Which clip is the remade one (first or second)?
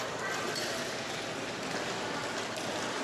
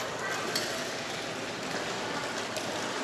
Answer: second